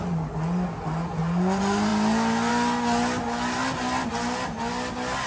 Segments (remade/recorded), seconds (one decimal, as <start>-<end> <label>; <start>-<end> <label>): 0.0-5.3 recorded